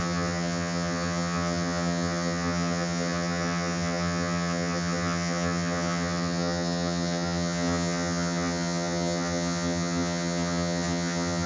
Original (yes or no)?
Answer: no